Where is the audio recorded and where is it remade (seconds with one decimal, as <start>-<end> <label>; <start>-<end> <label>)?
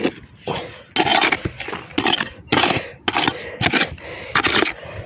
0.0-5.1 recorded